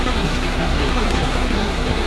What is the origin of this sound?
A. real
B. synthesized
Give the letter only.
B